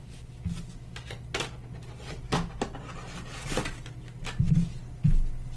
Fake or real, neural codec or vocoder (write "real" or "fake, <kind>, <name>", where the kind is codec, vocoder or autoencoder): real